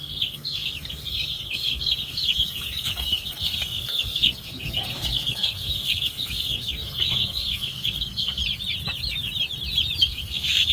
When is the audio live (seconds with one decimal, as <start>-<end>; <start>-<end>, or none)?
8.4-10.0